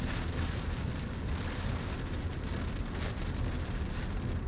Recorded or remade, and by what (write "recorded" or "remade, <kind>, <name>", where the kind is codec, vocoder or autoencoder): recorded